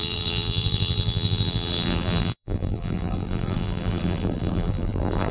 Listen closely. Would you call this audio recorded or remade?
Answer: remade